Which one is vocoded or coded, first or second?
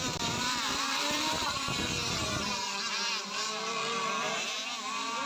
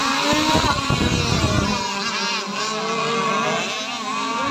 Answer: first